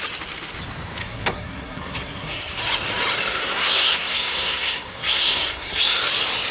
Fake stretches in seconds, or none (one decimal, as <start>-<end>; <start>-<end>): 1.0-2.6; 3.4-6.0